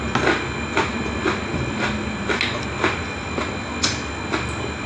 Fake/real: real